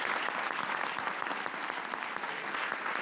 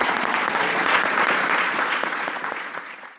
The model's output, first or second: second